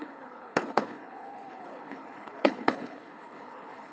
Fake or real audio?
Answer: fake